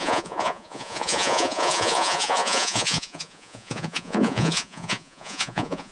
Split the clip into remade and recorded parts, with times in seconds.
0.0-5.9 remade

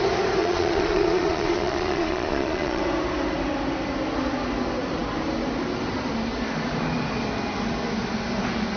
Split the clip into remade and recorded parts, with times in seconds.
0.0-0.4 recorded; 0.4-2.8 remade; 2.8-8.8 recorded

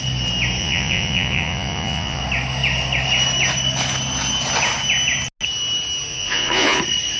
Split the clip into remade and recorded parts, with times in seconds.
0.0-0.6 recorded; 0.6-2.2 remade; 2.2-6.1 recorded; 6.1-6.8 remade; 6.8-7.2 recorded

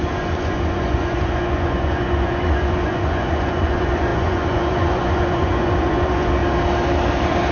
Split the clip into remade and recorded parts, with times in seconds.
0.0-6.4 remade; 6.4-7.5 recorded